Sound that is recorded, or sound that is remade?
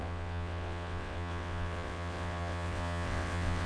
remade